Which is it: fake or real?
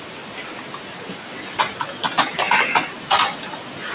fake